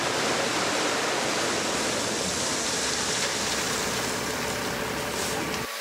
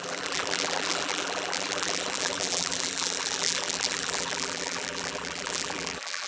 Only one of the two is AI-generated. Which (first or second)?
second